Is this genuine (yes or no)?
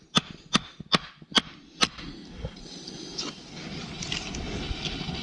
yes